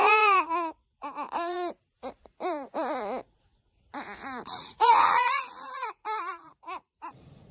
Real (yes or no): no